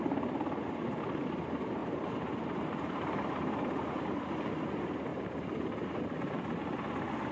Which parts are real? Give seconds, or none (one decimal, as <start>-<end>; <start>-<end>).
0.0-1.8; 4.0-5.1; 6.0-7.3